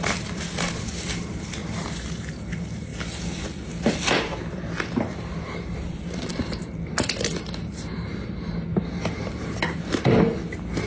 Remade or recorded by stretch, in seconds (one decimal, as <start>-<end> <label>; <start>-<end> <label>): 0.0-2.9 remade; 2.9-5.0 recorded; 5.0-10.9 remade